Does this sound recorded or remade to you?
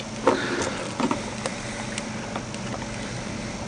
recorded